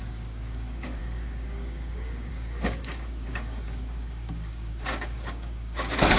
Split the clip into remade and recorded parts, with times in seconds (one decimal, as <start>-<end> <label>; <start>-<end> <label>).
0.0-6.2 remade